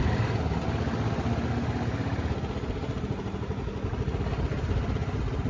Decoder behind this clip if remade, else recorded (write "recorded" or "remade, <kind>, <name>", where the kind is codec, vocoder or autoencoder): recorded